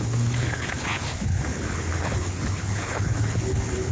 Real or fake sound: fake